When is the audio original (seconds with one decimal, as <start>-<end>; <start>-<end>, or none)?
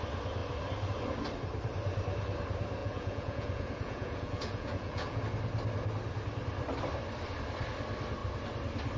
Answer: 0.0-2.8; 5.2-9.0